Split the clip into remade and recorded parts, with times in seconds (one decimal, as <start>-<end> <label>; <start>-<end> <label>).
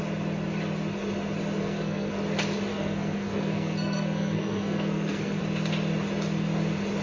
0.0-1.6 recorded; 1.6-2.1 remade; 2.1-2.7 recorded; 2.7-5.4 remade; 5.4-7.0 recorded